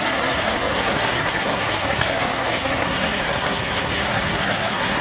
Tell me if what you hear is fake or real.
fake